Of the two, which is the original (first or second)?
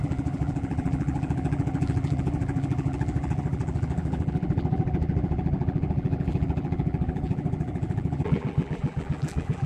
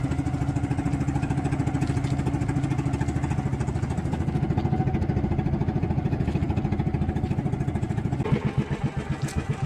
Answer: second